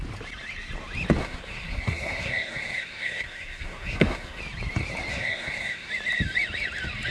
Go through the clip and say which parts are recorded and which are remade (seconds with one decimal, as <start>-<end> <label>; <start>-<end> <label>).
0.0-1.2 recorded; 1.2-4.4 remade; 4.4-5.1 recorded; 5.1-5.9 remade; 5.9-7.1 recorded